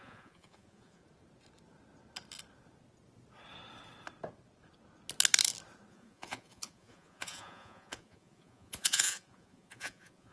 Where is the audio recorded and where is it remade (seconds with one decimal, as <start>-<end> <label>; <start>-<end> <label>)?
0.0-1.0 remade; 1.0-5.9 recorded; 5.9-10.3 remade